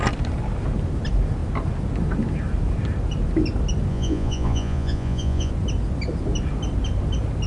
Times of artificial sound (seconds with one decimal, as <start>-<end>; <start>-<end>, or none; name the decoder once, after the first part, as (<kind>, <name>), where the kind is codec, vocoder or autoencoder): 3.9-5.5 (vocoder, Vocos)